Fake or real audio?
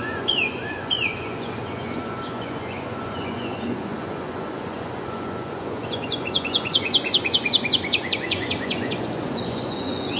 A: fake